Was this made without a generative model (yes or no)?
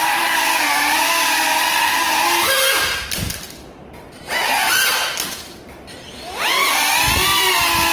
yes